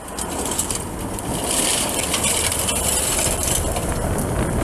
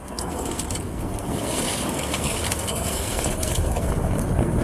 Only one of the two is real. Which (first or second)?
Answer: first